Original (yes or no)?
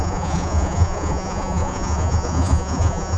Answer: no